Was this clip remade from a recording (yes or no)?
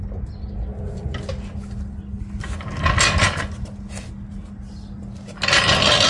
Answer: no